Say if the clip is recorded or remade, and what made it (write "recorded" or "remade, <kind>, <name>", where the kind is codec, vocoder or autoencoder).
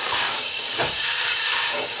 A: remade, codec, DAC